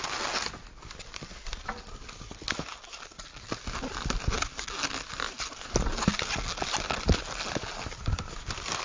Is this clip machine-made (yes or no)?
no